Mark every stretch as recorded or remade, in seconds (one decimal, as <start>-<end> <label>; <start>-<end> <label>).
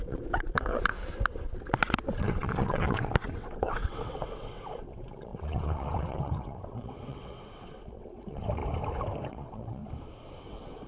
0.0-1.0 remade; 1.0-2.2 recorded; 2.2-8.6 remade; 8.6-9.3 recorded; 9.3-9.8 remade; 9.8-10.4 recorded; 10.4-10.9 remade